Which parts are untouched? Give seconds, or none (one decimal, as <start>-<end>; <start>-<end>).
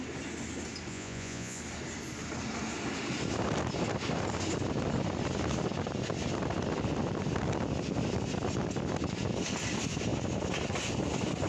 0.0-0.9; 1.6-11.5